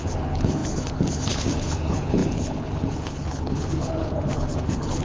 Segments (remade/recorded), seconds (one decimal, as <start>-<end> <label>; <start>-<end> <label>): 0.0-5.0 remade